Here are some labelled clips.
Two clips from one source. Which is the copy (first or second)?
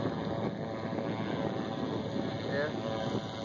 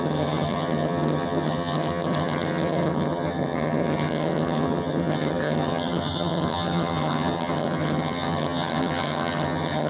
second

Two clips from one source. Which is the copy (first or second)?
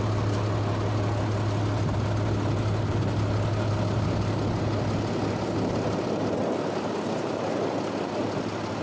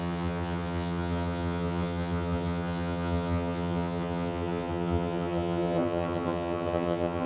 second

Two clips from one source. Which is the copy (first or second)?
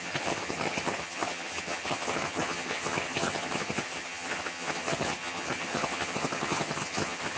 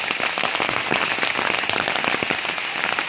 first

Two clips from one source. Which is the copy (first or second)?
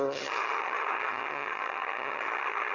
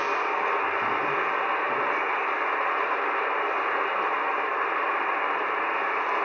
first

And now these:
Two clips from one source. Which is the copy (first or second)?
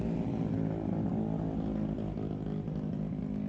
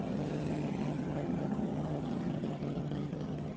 second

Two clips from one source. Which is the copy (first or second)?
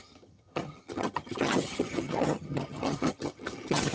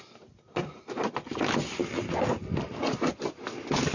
first